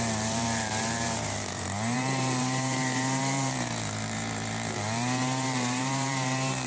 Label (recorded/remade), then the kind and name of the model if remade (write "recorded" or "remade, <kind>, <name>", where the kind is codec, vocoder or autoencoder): remade, vocoder, BigVGAN v2